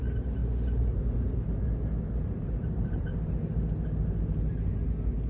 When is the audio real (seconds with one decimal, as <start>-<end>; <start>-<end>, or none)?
0.4-2.0; 3.1-5.3